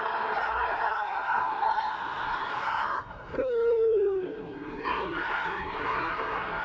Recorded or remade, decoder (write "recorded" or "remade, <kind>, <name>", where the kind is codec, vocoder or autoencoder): remade, codec, SNAC